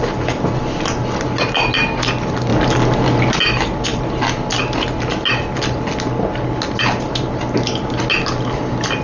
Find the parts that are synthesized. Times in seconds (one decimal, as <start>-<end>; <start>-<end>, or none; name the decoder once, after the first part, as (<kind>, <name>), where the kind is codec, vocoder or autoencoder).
none